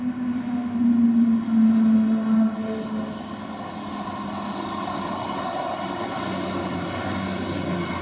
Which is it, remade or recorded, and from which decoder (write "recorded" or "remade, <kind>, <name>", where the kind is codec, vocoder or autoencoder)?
recorded